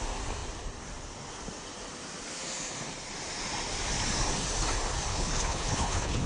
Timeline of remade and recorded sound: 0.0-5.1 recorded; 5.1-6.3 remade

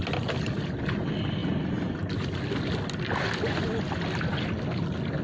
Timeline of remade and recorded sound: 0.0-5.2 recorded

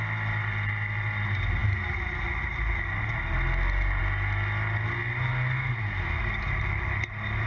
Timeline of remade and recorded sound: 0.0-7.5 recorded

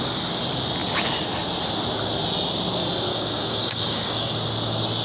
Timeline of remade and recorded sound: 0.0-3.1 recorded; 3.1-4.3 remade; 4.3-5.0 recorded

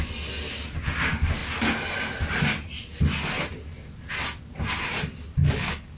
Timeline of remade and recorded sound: 0.0-5.4 recorded; 5.4-6.0 remade

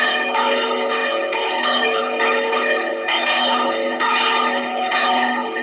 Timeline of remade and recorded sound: 0.0-5.6 remade

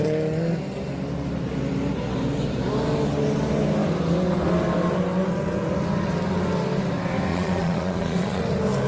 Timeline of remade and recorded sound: 0.0-7.3 recorded; 7.3-8.4 remade; 8.4-8.9 recorded

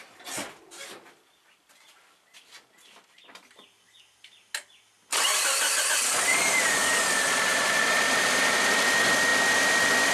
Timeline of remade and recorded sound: 0.0-5.1 recorded; 5.1-5.8 remade; 5.8-6.3 recorded; 6.3-6.8 remade; 6.8-7.5 recorded; 7.5-8.6 remade; 8.6-10.1 recorded